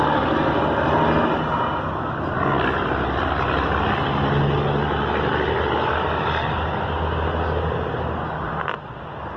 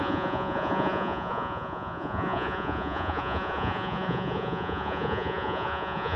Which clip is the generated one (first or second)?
second